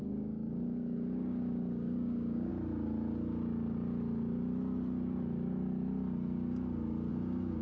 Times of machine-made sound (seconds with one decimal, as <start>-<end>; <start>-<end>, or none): 0.0-2.5; 7.1-7.6